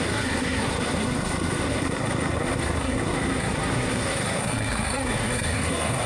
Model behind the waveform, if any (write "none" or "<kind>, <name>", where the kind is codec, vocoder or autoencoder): codec, SNAC